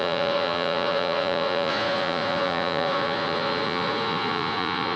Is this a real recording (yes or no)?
no